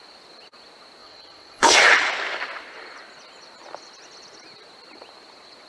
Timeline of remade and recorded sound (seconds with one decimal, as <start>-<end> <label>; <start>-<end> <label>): 0.0-1.0 recorded; 1.0-2.1 remade; 2.1-5.7 recorded